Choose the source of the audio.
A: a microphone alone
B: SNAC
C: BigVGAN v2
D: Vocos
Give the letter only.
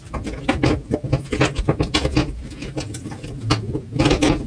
A